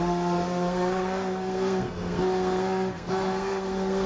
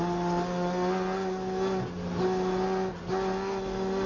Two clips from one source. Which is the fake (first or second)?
first